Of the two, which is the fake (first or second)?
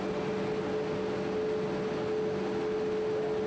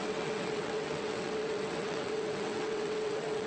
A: second